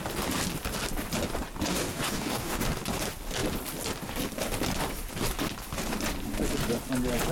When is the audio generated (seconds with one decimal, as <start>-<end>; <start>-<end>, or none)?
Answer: 1.7-2.6